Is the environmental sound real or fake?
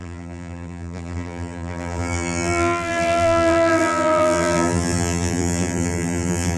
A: fake